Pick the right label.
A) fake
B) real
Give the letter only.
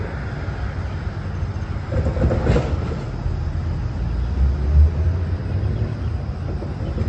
B